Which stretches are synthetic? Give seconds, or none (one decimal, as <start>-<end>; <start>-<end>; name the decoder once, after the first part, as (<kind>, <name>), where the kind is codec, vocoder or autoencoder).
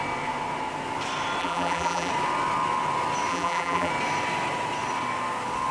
1.4-2.1 (vocoder, BigVGAN v2); 3.3-3.9